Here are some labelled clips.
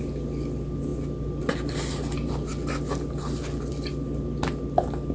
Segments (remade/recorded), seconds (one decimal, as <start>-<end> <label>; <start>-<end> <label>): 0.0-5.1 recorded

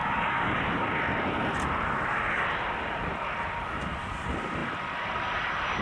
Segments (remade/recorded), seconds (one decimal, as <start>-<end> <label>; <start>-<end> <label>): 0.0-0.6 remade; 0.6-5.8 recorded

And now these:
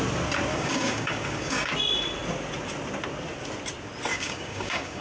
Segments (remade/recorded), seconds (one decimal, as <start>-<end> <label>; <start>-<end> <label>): 0.0-0.5 recorded; 0.5-1.7 remade; 1.7-4.1 recorded; 4.1-5.0 remade

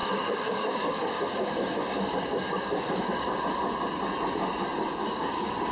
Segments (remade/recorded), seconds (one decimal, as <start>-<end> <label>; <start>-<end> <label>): 0.0-3.4 remade; 3.4-5.0 recorded; 5.0-5.7 remade